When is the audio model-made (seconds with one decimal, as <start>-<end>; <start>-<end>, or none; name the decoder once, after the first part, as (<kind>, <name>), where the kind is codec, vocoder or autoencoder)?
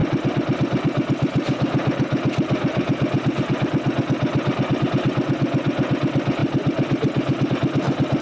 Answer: none